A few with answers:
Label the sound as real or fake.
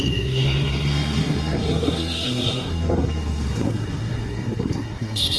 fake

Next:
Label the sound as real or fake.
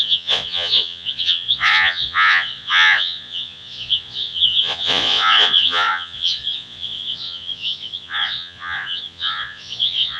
fake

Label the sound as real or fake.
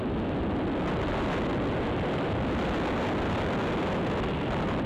real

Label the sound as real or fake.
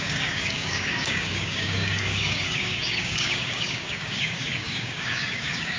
fake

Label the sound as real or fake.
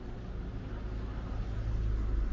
real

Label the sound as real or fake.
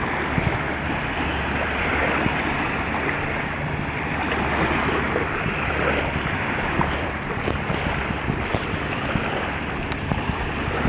real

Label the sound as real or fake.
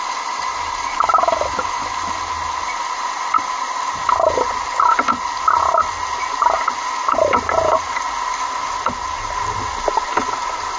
real